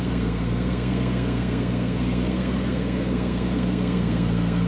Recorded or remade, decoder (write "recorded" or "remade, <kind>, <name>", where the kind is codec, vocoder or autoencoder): remade, codec, SNAC